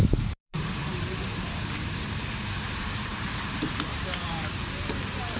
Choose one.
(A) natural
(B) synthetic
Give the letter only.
B